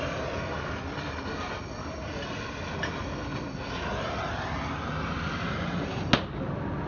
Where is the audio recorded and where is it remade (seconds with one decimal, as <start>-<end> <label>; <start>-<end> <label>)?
0.0-6.9 recorded